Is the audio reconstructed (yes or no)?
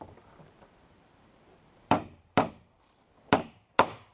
yes